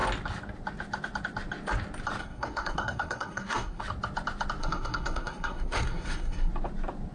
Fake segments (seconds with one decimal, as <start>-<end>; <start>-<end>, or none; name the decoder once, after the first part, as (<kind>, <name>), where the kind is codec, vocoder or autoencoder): 2.2-3.8 (codec, SNAC); 4.6-6.5